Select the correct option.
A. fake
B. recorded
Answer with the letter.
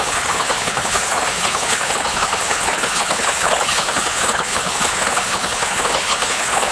A